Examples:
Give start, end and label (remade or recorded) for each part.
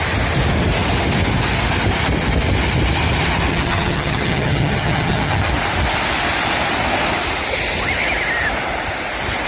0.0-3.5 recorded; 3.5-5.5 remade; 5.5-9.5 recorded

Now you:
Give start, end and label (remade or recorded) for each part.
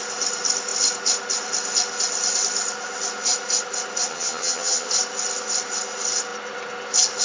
0.0-4.1 recorded; 4.1-4.9 remade; 4.9-7.2 recorded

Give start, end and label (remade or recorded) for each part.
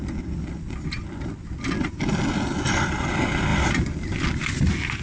0.0-5.0 recorded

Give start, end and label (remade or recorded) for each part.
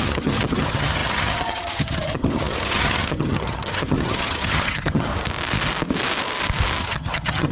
0.0-5.1 remade; 5.1-6.8 recorded; 6.8-7.5 remade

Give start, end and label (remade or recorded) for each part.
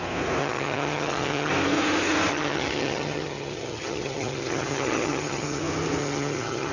0.0-0.4 recorded; 0.4-1.5 remade; 1.5-2.3 recorded; 2.3-5.6 remade; 5.6-6.0 recorded; 6.0-6.7 remade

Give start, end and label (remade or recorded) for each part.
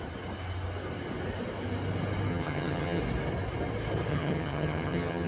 0.0-2.3 recorded; 2.3-3.0 remade; 3.0-4.1 recorded; 4.1-5.3 remade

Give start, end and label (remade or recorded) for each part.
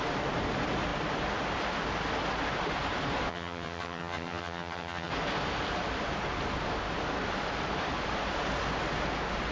0.0-3.3 recorded; 3.3-5.1 remade; 5.1-9.5 recorded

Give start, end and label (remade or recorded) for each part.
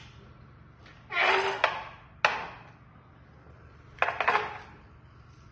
0.0-5.5 recorded